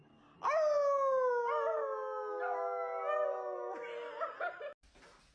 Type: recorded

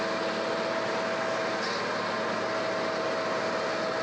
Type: recorded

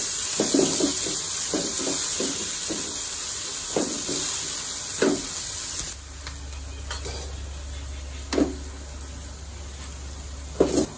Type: recorded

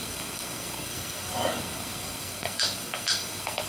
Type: remade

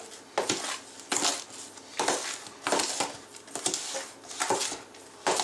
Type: recorded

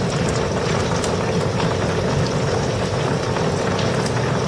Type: recorded